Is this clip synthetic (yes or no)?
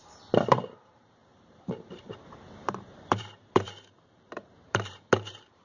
yes